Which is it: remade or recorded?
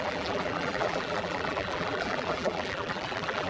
remade